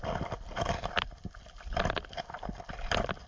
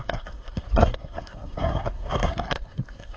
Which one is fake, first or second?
second